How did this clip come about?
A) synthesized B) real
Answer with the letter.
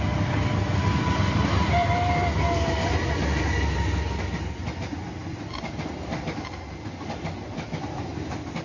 B